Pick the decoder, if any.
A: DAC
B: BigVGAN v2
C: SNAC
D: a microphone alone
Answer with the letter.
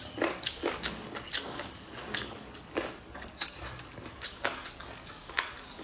A